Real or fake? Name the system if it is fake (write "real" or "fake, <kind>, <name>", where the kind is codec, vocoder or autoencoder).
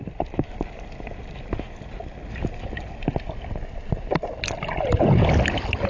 real